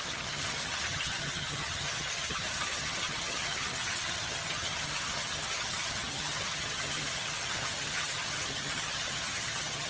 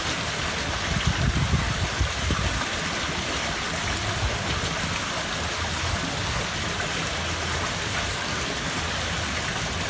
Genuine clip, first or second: second